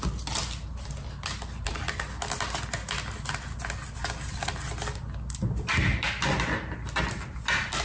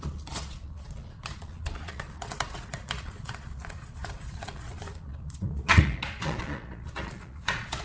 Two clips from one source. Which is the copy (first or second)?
second